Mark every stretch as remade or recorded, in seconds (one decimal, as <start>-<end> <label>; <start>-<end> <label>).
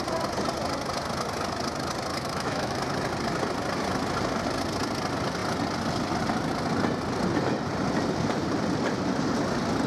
0.0-2.1 recorded; 2.1-2.8 remade; 2.8-9.9 recorded